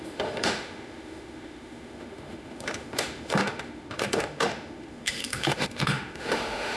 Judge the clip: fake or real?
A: fake